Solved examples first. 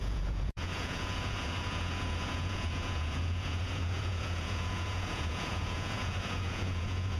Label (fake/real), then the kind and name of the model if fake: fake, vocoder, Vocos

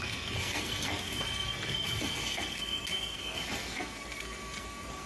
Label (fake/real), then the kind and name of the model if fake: fake, codec, SNAC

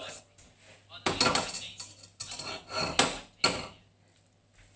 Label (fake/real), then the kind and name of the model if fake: real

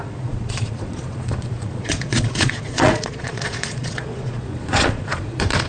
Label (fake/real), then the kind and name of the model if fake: fake, vocoder, Vocos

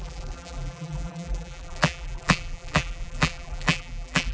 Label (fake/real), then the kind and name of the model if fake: fake, vocoder, BigVGAN v2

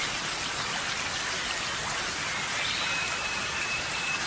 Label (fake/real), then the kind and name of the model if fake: real